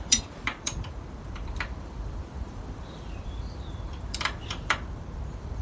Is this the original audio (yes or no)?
no